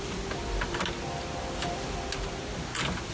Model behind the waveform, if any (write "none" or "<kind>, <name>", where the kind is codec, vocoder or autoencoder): none